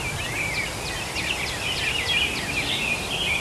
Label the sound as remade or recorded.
recorded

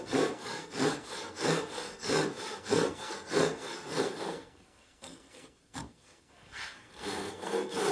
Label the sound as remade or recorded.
remade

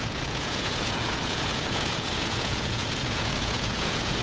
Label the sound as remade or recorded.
remade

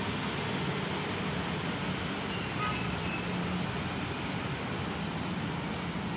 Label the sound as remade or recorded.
recorded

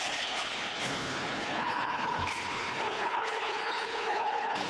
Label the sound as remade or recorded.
remade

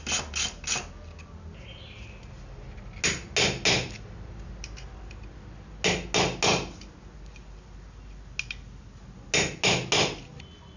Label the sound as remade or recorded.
recorded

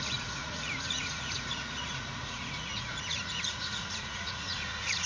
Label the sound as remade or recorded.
remade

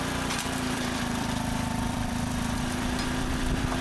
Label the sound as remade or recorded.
remade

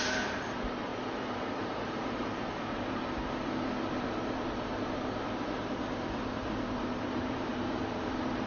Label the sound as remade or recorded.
remade